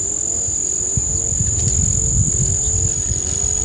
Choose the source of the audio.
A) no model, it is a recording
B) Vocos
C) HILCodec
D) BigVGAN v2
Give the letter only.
A